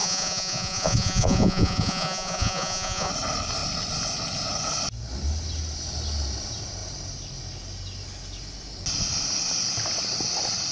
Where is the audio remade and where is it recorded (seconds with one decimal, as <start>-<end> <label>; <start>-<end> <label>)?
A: 0.0-3.1 remade; 3.1-10.7 recorded